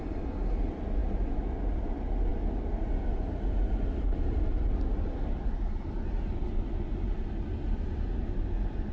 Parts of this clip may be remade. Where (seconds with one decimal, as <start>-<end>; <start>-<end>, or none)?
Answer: none